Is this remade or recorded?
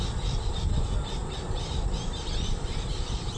remade